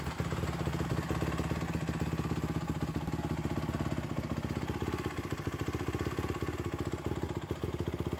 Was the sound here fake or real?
real